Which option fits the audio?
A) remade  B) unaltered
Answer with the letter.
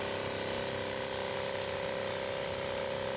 B